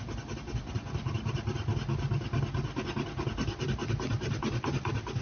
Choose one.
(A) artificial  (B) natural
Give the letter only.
B